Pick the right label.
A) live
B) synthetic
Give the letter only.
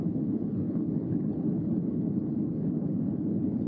B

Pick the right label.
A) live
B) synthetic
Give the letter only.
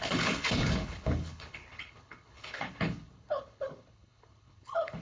B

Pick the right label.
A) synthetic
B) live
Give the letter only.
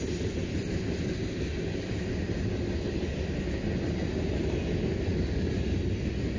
B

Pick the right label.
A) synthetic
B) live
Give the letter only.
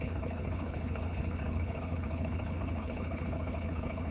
A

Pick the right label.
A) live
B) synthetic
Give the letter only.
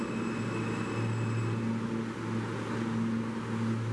A